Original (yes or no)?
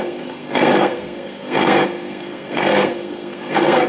no